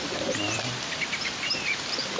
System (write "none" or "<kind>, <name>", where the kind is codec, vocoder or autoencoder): vocoder, BigVGAN v2